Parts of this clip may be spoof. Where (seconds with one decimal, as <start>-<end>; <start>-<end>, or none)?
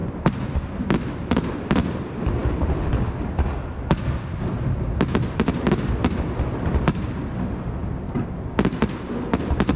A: none